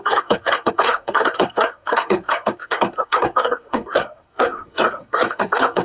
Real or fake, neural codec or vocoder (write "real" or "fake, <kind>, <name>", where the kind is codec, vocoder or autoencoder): fake, codec, SNAC